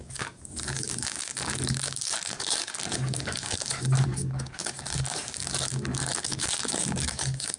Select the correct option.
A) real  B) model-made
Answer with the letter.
B